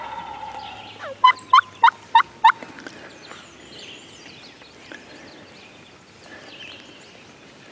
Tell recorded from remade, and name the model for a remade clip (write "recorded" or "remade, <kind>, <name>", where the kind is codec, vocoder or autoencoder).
recorded